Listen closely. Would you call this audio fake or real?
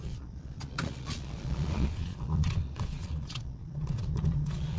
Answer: fake